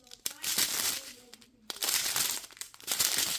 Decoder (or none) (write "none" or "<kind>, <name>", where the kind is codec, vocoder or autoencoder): vocoder, BigVGAN v2